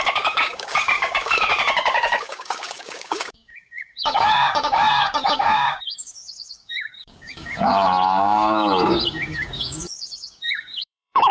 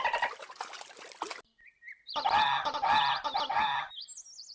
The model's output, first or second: first